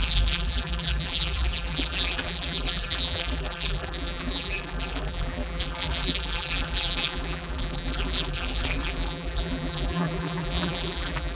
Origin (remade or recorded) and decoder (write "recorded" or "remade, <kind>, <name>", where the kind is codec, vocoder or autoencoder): remade, vocoder, BigVGAN v2